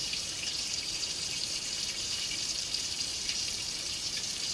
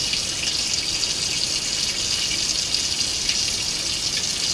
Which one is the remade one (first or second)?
first